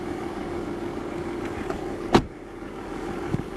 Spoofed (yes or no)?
yes